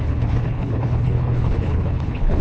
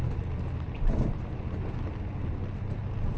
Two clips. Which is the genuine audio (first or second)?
second